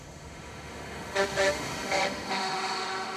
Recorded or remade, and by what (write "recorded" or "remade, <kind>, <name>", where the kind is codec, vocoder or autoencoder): remade, autoencoder, DAC-VAE